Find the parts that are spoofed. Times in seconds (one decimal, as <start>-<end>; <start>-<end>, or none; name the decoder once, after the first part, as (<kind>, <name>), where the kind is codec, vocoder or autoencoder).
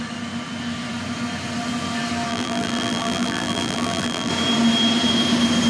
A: 2.3-4.3 (vocoder, BigVGAN v2)